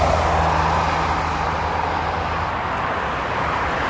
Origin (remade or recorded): recorded